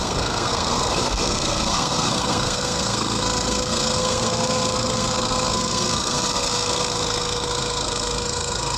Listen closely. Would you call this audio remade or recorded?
remade